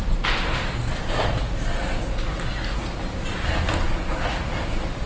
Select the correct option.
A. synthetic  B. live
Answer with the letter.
B